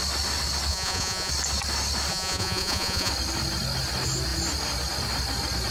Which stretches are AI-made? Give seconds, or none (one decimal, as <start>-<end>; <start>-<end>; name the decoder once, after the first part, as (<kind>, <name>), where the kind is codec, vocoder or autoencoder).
0.7-1.3 (vocoder, Vocos); 2.1-3.1